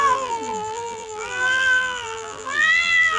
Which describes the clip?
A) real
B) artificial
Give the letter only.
B